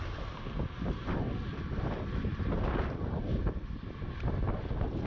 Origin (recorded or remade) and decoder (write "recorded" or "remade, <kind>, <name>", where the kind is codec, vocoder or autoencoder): recorded